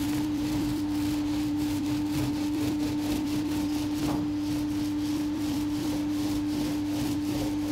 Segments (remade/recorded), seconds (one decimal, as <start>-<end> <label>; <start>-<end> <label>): 0.0-4.0 remade; 4.0-5.1 recorded; 5.1-7.7 remade